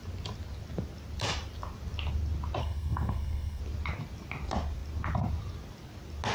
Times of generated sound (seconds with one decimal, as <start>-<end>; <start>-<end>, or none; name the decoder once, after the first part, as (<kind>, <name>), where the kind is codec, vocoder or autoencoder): 2.6-3.6 (codec, SNAC)